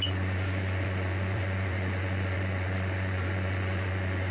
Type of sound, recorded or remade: remade